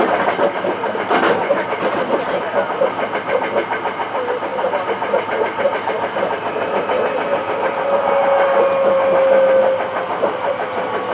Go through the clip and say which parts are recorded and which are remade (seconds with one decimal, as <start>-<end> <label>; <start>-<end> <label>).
0.0-11.1 recorded